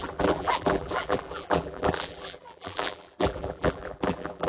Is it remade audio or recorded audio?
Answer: remade